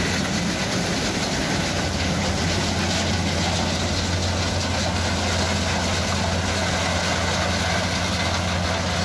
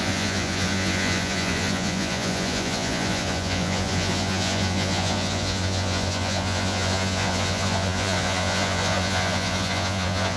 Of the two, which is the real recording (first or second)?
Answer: first